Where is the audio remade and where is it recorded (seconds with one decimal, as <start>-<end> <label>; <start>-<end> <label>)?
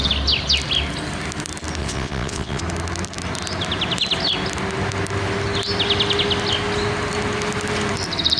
0.0-1.8 recorded; 1.8-2.6 remade; 2.6-8.4 recorded